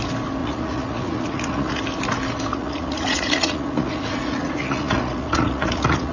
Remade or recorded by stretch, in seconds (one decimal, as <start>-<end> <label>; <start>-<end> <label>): 0.0-0.4 recorded; 0.4-1.8 remade; 1.8-2.5 recorded; 2.5-6.1 remade